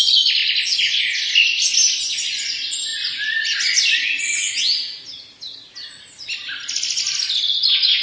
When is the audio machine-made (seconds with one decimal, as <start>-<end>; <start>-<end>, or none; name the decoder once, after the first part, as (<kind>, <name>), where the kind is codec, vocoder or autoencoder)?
none